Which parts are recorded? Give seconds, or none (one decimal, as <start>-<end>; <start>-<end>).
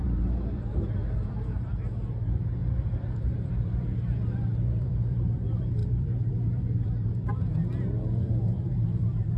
none